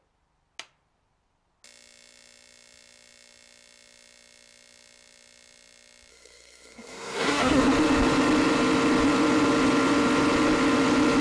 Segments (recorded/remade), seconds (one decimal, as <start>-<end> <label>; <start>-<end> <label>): 0.0-6.1 recorded; 6.1-7.6 remade; 7.6-11.2 recorded